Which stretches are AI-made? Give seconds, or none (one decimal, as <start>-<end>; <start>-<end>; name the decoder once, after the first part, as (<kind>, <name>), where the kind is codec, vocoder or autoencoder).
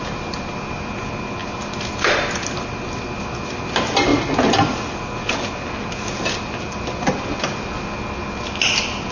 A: none